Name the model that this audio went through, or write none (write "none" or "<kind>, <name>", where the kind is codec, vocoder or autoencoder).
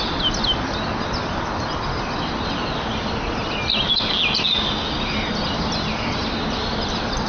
none